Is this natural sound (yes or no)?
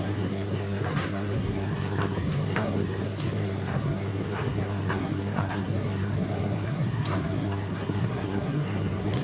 no